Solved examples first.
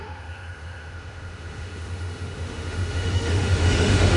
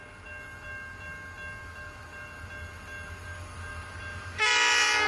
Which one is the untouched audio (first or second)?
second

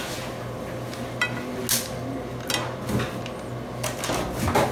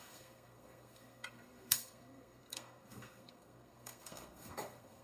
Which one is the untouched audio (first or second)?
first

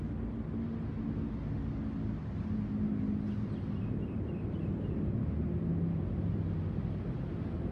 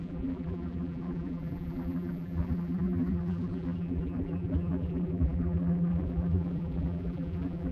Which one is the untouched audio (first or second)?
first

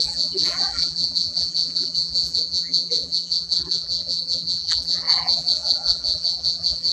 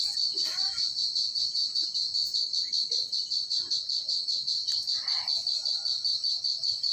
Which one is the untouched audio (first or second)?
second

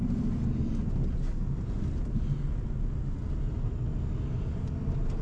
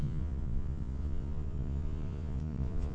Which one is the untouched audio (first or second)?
first